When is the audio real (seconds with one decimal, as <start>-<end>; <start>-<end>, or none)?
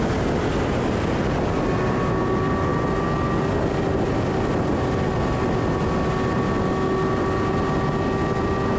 0.0-8.8